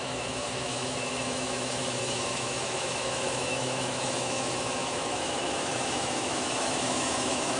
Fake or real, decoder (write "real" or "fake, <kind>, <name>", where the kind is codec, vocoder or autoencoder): fake, autoencoder, DAC-VAE